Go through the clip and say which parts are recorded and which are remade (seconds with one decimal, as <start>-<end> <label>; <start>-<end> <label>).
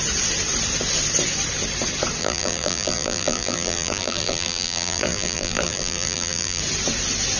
0.0-2.2 recorded; 2.2-6.6 remade; 6.6-7.4 recorded